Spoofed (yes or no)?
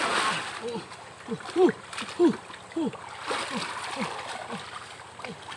no